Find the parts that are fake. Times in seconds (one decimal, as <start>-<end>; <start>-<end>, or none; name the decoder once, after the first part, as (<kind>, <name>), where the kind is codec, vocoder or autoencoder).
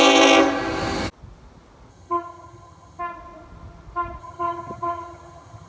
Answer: 1.9-3.0 (vocoder, HiFi-GAN); 4.2-5.7